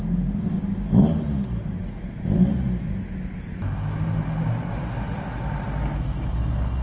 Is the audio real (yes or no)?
yes